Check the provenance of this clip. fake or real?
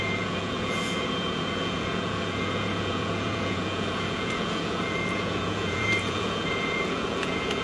fake